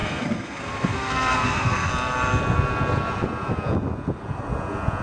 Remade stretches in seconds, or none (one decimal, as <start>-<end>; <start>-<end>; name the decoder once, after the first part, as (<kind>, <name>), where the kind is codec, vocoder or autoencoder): 0.0-1.9 (codec, SNAC)